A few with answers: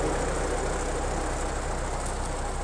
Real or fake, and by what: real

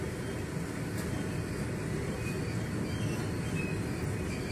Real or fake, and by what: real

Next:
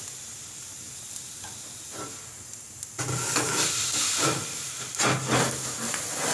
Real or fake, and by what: real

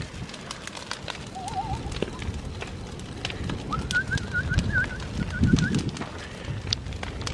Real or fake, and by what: real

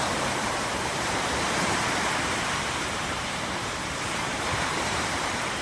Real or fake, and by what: fake, vocoder, BigVGAN v2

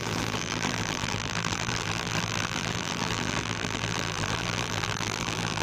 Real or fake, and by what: fake, vocoder, BigVGAN v2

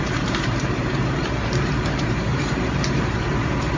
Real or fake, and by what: fake, vocoder, BigVGAN v2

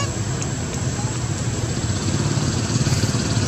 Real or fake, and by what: real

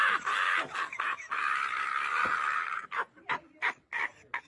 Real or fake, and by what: real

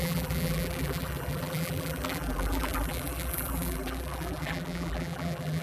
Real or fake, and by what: fake, vocoder, BigVGAN v2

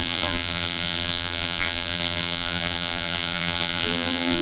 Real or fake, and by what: fake, vocoder, BigVGAN v2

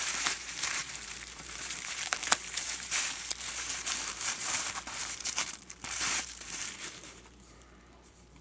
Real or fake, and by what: fake, vocoder, BigVGAN v2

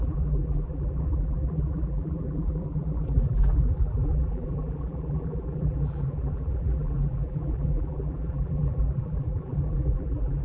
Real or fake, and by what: fake, vocoder, BigVGAN v2